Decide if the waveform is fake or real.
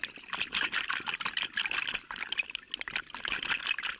real